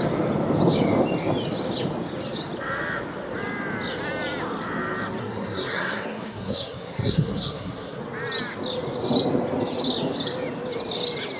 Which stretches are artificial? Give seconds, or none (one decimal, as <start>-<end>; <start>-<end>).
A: 5.2-8.0